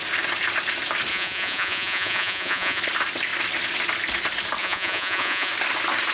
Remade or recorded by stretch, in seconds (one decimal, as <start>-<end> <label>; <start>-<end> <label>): 0.0-1.1 recorded; 1.1-2.8 remade; 2.8-4.6 recorded; 4.6-5.5 remade; 5.5-6.1 recorded